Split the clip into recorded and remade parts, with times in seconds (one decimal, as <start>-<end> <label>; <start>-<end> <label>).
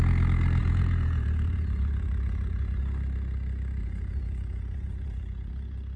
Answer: 0.0-0.6 recorded; 0.6-2.8 remade; 2.8-3.8 recorded; 3.8-5.5 remade; 5.5-6.0 recorded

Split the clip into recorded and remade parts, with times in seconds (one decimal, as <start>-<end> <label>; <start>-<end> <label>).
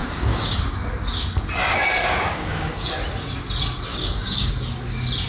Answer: 0.0-0.6 remade; 0.6-2.0 recorded; 2.0-2.9 remade; 2.9-3.9 recorded; 3.9-4.5 remade; 4.5-5.3 recorded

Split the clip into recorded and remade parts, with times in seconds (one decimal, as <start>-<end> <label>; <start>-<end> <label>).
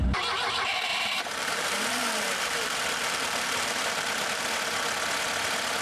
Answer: 0.0-0.9 recorded; 0.9-4.4 remade; 4.4-5.8 recorded